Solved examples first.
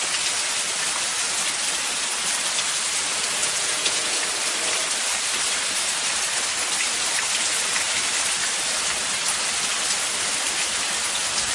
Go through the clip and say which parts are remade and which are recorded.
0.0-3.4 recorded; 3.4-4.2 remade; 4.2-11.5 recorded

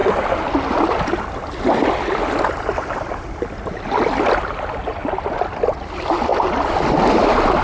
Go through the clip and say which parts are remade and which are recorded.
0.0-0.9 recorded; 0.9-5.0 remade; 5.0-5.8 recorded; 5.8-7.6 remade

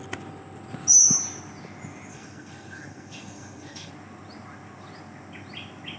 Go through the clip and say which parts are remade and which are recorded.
0.0-2.1 recorded; 2.1-3.9 remade; 3.9-6.0 recorded